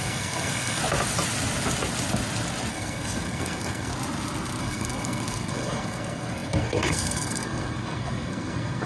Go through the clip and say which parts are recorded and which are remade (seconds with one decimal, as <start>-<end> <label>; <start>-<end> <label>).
0.0-0.8 remade; 0.8-2.7 recorded; 2.7-3.9 remade; 3.9-4.6 recorded; 4.6-8.9 remade